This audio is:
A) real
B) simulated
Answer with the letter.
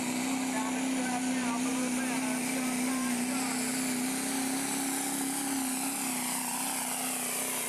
A